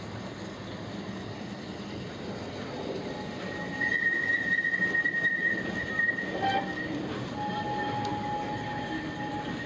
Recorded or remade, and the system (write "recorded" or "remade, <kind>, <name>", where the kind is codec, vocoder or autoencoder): recorded